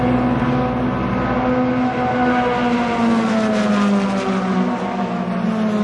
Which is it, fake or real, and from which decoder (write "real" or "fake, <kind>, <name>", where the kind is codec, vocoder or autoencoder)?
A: real